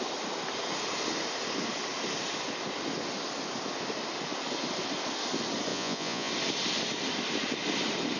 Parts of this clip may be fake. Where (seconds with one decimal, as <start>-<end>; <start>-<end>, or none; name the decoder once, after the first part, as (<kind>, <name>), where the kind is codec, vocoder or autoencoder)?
5.7-6.3 (vocoder, Vocos)